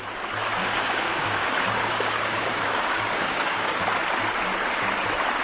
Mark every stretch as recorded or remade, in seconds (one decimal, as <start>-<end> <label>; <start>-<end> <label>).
0.0-0.6 recorded; 0.6-3.8 remade; 3.8-5.4 recorded